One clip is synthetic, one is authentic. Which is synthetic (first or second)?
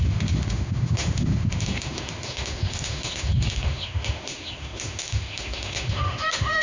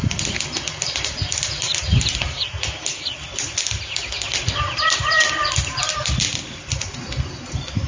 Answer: first